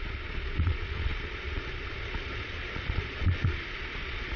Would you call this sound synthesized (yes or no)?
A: yes